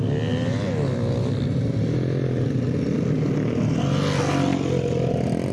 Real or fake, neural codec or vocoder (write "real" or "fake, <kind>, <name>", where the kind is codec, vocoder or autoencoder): real